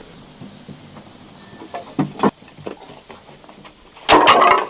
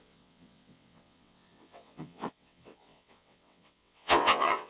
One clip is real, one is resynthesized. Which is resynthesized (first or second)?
second